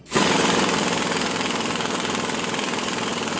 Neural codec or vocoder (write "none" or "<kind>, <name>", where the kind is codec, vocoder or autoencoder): vocoder, BigVGAN v2